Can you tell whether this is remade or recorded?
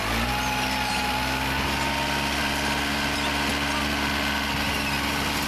recorded